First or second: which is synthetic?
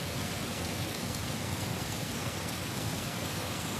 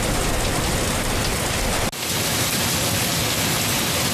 first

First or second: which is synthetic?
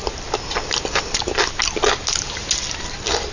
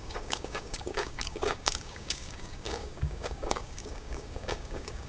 second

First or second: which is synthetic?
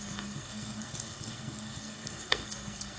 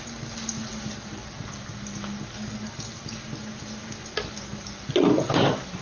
first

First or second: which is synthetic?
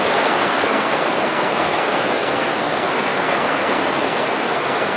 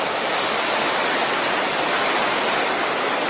first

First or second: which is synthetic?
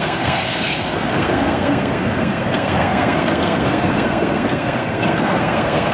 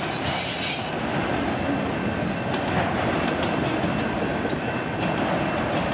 first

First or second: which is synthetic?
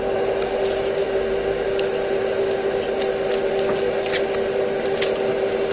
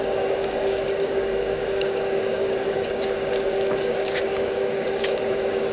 second